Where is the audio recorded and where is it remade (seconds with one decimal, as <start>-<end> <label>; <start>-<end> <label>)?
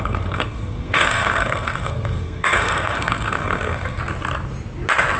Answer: 0.0-4.0 remade; 4.0-5.2 recorded